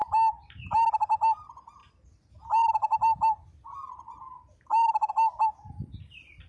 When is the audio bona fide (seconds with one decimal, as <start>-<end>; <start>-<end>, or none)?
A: 0.0-6.5